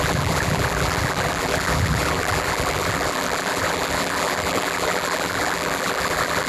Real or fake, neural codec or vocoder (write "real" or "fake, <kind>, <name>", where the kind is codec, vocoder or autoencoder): fake, vocoder, BigVGAN v2